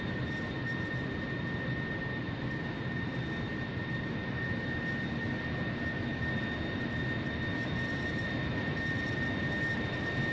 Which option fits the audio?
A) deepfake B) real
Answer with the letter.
B